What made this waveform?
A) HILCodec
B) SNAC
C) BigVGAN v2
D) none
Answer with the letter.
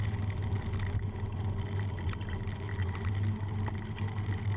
D